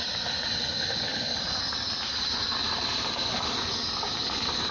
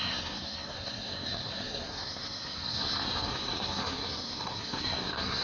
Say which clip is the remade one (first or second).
second